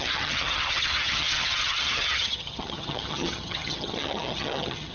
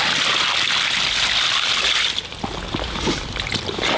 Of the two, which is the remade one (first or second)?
first